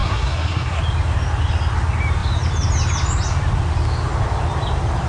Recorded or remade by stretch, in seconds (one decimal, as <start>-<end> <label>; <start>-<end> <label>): 0.0-0.8 remade; 0.8-5.1 recorded